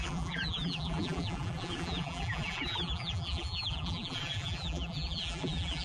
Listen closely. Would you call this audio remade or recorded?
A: remade